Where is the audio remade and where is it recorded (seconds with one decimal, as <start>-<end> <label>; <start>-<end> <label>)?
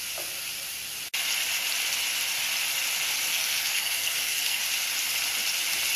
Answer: 0.0-3.3 recorded; 3.3-4.6 remade; 4.6-6.0 recorded